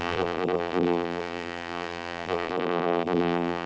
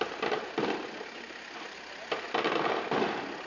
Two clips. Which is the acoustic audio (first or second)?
second